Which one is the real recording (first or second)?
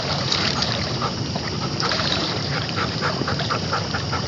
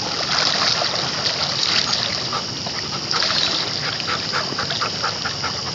second